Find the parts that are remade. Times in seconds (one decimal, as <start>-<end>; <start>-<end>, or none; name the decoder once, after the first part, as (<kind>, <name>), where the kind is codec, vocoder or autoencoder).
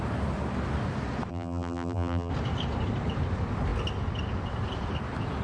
1.3-2.3 (vocoder, BigVGAN v2)